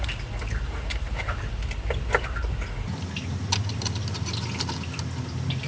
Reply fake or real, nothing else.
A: real